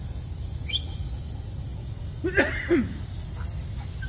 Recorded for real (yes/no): yes